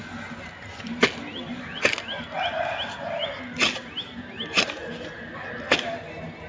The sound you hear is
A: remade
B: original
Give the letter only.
B